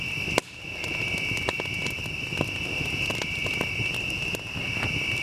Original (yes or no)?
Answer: yes